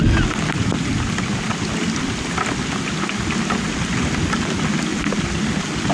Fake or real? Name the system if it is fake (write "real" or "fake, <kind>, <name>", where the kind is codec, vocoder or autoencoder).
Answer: real